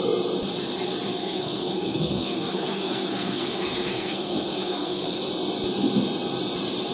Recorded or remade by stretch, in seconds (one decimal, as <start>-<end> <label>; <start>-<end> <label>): 0.0-1.2 recorded; 1.2-5.3 remade; 5.3-6.9 recorded